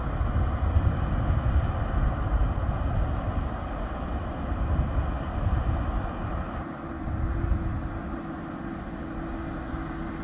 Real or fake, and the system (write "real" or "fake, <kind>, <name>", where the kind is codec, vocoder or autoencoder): real